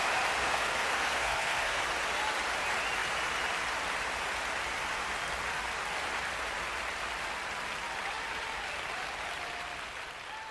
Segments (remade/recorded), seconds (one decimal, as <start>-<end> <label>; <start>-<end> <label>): 0.0-0.4 recorded; 0.4-1.8 remade; 1.8-10.5 recorded